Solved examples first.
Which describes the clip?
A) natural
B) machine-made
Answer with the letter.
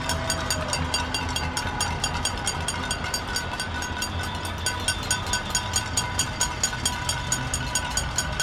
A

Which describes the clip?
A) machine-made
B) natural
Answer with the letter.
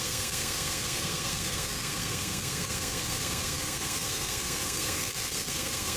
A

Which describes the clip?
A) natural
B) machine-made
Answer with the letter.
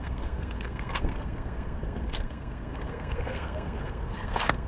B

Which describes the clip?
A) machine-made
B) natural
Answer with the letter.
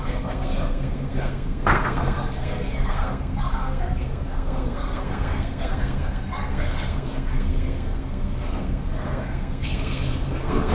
A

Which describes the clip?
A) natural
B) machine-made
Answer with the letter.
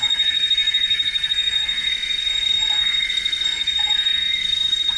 B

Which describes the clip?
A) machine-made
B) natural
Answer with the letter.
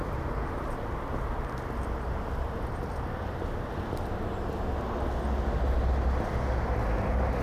B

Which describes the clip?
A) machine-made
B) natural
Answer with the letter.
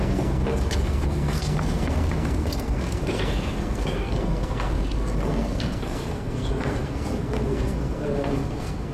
A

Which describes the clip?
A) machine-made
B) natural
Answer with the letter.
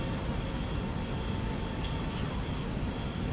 B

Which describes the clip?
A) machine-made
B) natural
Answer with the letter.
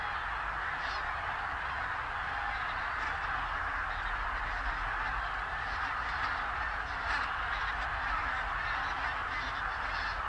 B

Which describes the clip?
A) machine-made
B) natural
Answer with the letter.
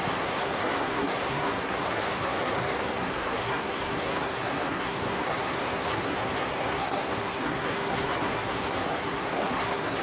A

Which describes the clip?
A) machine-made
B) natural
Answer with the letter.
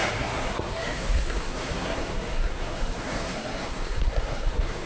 A